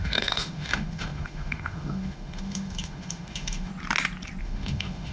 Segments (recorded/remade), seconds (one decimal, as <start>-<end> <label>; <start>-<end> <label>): 0.0-3.7 remade; 3.7-4.4 recorded; 4.4-5.1 remade

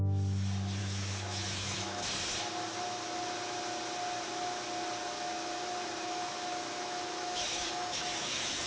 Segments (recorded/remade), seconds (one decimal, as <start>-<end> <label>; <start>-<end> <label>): 0.0-0.8 recorded; 0.8-2.1 remade; 2.1-5.0 recorded; 5.0-8.7 remade

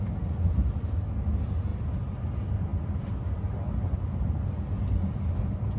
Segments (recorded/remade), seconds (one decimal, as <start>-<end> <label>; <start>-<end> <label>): 0.0-5.8 recorded

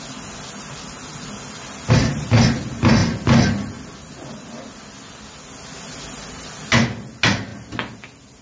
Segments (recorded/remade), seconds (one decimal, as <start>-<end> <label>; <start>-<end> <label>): 0.0-8.4 recorded